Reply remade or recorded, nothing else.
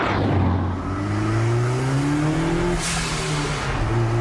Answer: recorded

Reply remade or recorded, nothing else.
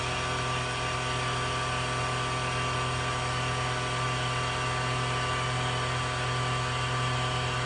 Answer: recorded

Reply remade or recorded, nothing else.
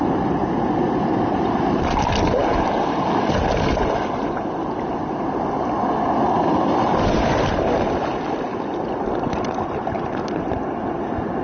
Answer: recorded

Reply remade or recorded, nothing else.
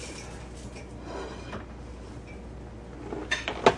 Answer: recorded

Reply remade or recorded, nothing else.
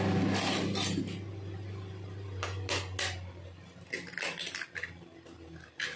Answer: recorded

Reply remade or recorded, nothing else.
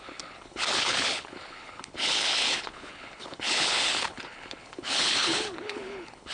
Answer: remade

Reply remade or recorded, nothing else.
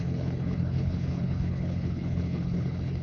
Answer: remade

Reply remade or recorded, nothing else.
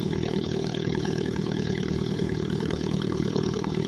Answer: remade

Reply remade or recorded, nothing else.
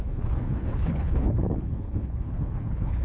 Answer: remade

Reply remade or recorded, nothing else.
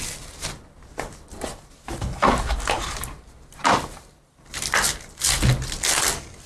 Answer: recorded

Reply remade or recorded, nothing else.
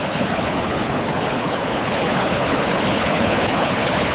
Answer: remade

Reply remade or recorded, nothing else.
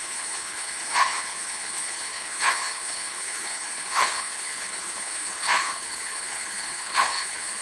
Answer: remade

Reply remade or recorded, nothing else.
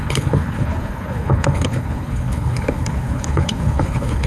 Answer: remade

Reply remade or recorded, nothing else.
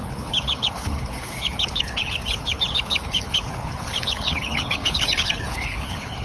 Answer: remade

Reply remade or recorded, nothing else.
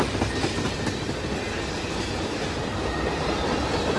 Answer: recorded